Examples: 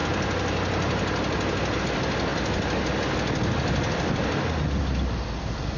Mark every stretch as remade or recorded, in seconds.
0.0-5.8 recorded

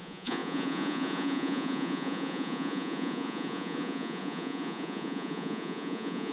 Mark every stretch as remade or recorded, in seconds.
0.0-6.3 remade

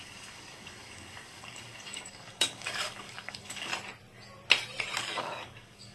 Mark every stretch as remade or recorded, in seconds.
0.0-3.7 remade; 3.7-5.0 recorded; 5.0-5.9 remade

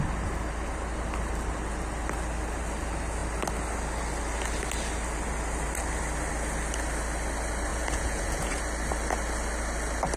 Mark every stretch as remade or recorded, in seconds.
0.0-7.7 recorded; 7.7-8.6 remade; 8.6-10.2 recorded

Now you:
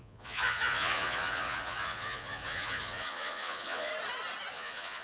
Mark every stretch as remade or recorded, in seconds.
0.0-3.9 remade; 3.9-4.5 recorded; 4.5-5.0 remade